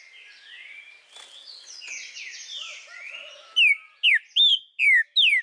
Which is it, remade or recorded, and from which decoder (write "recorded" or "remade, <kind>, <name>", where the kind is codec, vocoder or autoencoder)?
recorded